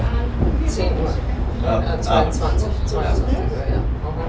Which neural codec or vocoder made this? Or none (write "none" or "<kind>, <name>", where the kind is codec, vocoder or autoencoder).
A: none